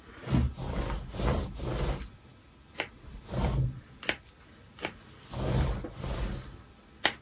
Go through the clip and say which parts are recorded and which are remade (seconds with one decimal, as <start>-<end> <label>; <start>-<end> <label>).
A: 0.0-2.3 recorded; 2.3-3.2 remade; 3.2-7.2 recorded